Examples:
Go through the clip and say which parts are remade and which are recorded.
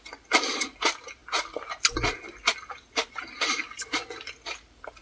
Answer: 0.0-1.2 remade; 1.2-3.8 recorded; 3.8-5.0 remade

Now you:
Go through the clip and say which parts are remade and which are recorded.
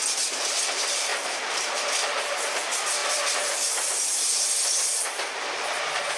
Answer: 0.0-1.1 recorded; 1.1-2.5 remade; 2.5-6.2 recorded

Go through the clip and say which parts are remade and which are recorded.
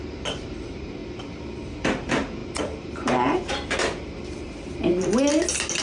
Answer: 0.0-1.0 remade; 1.0-1.8 recorded; 1.8-5.3 remade; 5.3-5.8 recorded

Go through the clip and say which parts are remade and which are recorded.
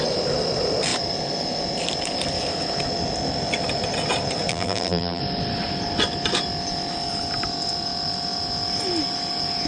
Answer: 0.0-4.5 recorded; 4.5-5.2 remade; 5.2-9.7 recorded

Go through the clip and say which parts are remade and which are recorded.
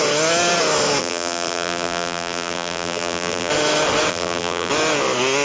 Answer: 0.0-1.0 recorded; 1.0-3.5 remade; 3.5-4.1 recorded; 4.1-4.7 remade; 4.7-5.4 recorded